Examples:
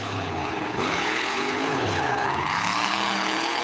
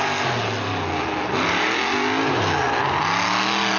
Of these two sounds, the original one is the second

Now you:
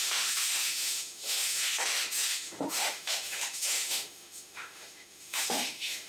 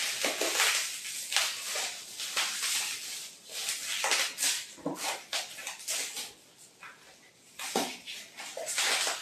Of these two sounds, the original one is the second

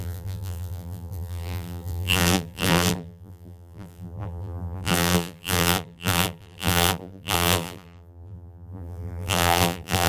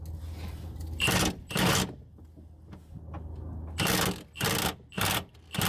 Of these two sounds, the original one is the second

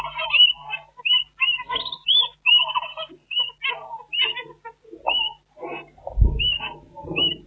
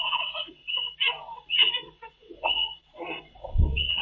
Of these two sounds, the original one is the first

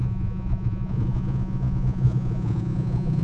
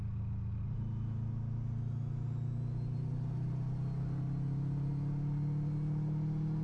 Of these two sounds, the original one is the second